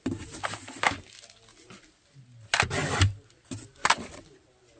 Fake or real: real